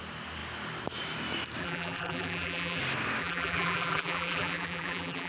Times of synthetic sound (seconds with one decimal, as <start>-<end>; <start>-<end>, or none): 1.6-2.8; 3.2-5.3